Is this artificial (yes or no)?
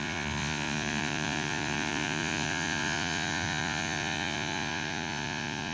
yes